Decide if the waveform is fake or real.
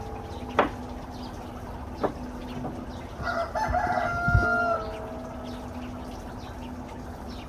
real